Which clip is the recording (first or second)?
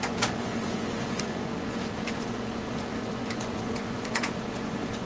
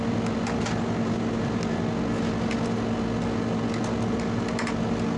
second